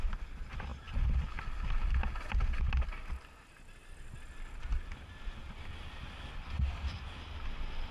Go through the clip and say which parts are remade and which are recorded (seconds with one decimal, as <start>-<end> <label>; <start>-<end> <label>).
0.0-7.9 recorded